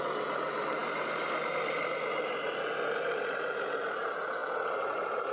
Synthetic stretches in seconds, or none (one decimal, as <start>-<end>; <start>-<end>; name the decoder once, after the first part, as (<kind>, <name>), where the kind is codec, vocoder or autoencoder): none